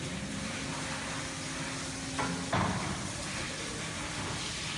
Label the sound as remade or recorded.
recorded